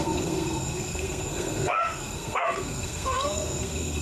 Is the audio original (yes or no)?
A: no